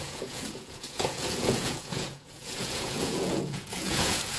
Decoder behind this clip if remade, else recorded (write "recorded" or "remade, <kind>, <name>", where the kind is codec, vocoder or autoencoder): remade, vocoder, Vocos